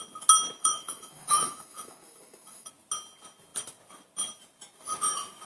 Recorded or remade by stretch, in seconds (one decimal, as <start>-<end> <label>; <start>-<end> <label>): 0.0-0.6 recorded; 0.6-2.7 remade; 2.7-5.4 recorded